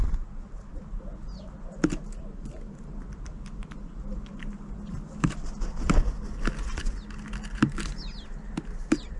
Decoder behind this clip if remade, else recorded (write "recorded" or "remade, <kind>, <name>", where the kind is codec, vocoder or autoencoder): recorded